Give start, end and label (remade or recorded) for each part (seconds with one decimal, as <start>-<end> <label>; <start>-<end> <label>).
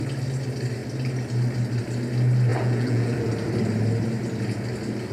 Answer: 0.0-2.5 recorded; 2.5-3.3 remade; 3.3-5.1 recorded